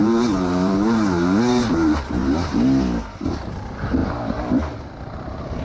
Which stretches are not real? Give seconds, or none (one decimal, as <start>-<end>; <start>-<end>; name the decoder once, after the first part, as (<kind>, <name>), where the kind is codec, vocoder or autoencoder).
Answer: 0.0-2.2 (vocoder, BigVGAN v2); 3.3-4.0; 4.8-5.6